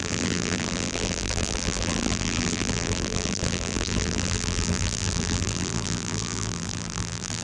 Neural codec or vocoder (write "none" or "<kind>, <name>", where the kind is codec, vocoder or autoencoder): vocoder, BigVGAN v2